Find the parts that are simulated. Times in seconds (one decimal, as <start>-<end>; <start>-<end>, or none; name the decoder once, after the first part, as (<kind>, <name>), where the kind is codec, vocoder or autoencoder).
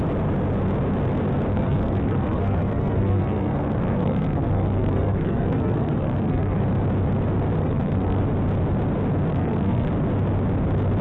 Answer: 1.5-6.6 (codec, SNAC); 7.6-8.2; 9.3-9.9